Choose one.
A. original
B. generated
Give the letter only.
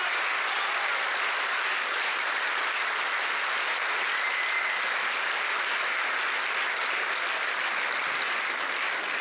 A